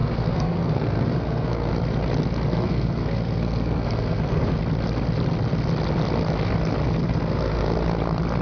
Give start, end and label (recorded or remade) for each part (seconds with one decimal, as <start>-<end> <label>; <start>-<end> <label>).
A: 0.0-1.7 remade; 1.7-2.5 recorded; 2.5-4.6 remade; 4.6-7.0 recorded; 7.0-7.7 remade; 7.7-8.4 recorded